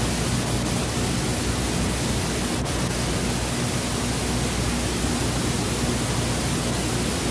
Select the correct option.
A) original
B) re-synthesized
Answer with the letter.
A